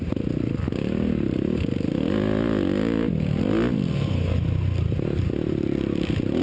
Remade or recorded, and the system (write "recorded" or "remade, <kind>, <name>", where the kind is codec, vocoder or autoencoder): recorded